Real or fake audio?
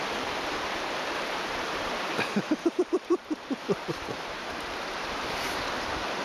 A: fake